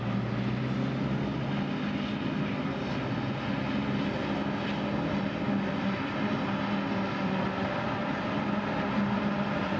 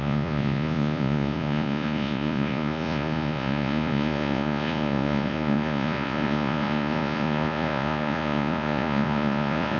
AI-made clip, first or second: second